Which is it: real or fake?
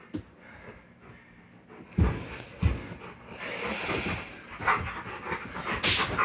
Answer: real